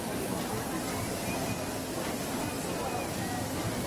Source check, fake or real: real